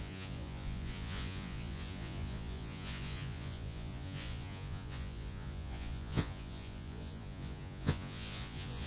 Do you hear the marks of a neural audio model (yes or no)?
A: yes